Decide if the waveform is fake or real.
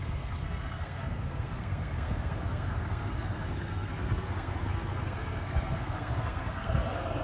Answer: fake